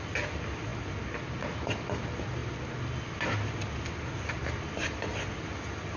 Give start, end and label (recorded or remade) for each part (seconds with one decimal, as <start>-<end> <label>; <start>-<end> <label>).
0.0-6.0 recorded